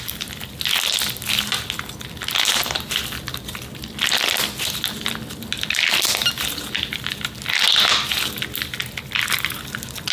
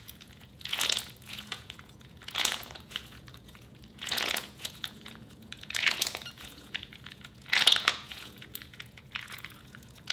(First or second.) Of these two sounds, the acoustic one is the first